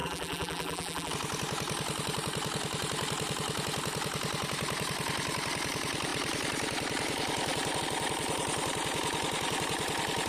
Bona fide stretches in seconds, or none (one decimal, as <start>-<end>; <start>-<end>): 1.1-10.3